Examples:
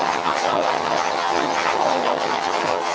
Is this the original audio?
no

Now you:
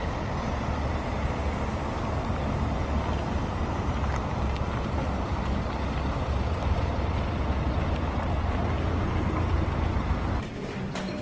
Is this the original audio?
yes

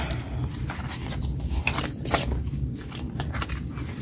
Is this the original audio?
yes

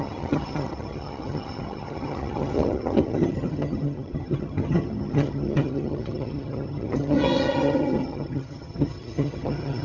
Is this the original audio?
no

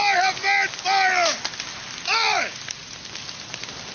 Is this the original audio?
yes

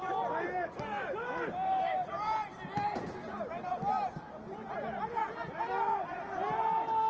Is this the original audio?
yes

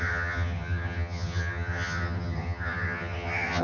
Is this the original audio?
no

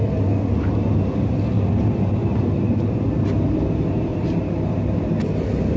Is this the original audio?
yes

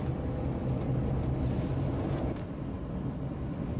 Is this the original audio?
yes